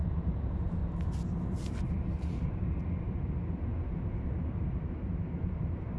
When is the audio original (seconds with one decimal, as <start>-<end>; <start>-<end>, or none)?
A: 0.8-1.4; 2.8-5.4

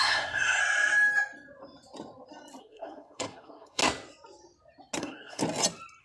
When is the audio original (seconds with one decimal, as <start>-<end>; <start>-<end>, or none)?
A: 0.6-2.6; 3.8-5.0; 5.4-6.0